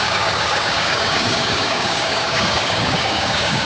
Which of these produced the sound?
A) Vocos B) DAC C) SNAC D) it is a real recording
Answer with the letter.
B